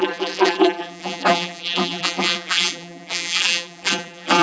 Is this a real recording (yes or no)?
no